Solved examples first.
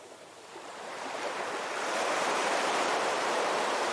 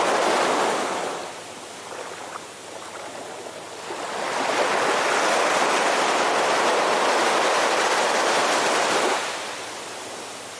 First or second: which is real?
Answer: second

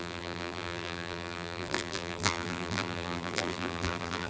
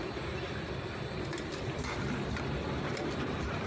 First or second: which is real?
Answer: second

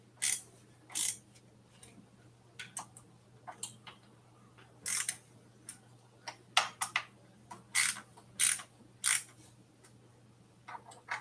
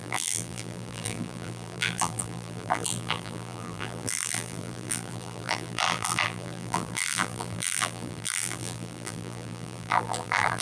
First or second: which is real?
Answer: first